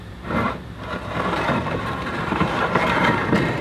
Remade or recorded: remade